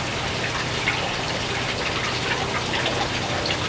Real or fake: real